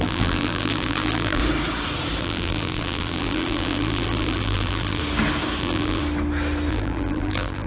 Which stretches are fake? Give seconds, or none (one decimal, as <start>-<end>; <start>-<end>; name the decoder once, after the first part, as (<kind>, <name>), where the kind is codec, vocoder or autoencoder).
0.0-1.4 (vocoder, BigVGAN v2); 2.2-5.0; 5.6-6.0; 6.7-7.7

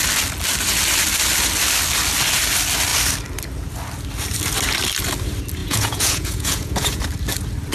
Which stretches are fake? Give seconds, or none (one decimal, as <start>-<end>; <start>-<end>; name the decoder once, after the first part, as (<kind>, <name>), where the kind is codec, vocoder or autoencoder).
5.6-7.0 (vocoder, Vocos)